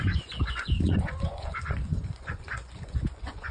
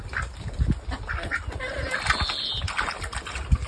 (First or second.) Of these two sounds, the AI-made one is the first